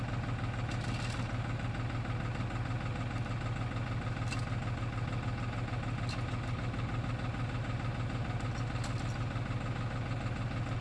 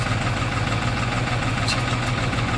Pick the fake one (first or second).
second